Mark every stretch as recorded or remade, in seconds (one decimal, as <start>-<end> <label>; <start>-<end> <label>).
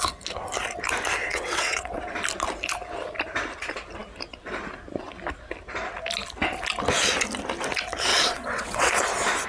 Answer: 0.0-1.2 recorded; 1.2-2.0 remade; 2.0-8.1 recorded; 8.1-8.9 remade; 8.9-9.5 recorded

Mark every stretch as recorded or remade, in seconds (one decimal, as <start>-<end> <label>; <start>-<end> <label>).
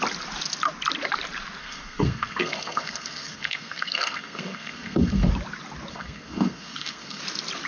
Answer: 0.0-1.6 recorded; 1.6-5.3 remade; 5.3-5.9 recorded; 5.9-7.2 remade; 7.2-7.7 recorded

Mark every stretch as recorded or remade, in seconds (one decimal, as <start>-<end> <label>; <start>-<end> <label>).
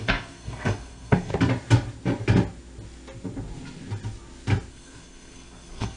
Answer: 0.0-1.3 remade; 1.3-4.7 recorded; 4.7-6.0 remade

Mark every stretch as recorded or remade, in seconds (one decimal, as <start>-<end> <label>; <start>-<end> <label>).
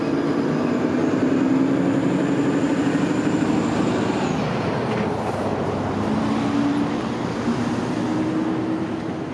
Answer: 0.0-9.3 recorded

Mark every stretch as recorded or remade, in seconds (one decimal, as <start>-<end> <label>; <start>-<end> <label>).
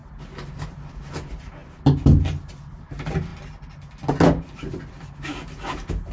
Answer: 0.0-6.1 recorded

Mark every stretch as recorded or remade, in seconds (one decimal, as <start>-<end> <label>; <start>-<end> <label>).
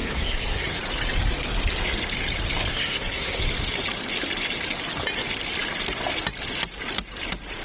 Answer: 0.0-0.8 remade; 0.8-2.7 recorded; 2.7-3.4 remade; 3.4-7.6 recorded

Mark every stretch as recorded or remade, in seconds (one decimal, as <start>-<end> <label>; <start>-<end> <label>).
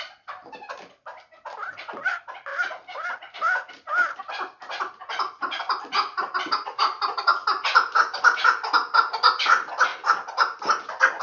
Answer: 0.0-11.2 recorded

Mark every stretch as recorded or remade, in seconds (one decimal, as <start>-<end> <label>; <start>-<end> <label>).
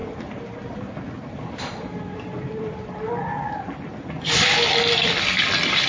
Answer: 0.0-2.9 remade; 2.9-5.9 recorded